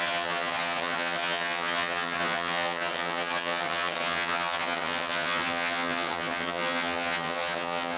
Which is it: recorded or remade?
remade